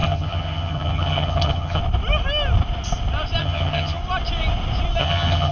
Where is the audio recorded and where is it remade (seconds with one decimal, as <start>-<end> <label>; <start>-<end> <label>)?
0.0-1.8 remade; 1.8-3.4 recorded; 3.4-4.0 remade; 4.0-5.0 recorded; 5.0-5.5 remade

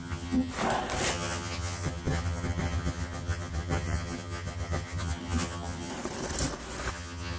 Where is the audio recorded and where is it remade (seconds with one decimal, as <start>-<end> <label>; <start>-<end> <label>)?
0.0-0.5 remade; 0.5-1.1 recorded; 1.1-5.9 remade; 5.9-6.9 recorded; 6.9-7.4 remade

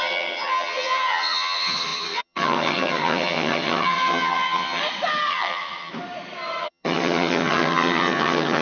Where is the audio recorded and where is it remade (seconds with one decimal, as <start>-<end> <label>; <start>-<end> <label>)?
0.0-4.8 remade; 4.8-5.3 recorded; 5.3-5.9 remade; 5.9-6.6 recorded; 6.6-8.6 remade